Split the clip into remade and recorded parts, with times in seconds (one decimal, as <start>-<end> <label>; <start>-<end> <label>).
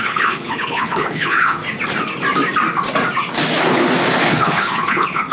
0.0-1.6 remade; 1.6-4.2 recorded; 4.2-5.3 remade